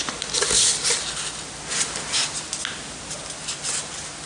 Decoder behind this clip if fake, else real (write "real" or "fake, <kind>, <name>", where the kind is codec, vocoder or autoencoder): real